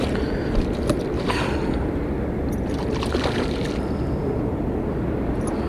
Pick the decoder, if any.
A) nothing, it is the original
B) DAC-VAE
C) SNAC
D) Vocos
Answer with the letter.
A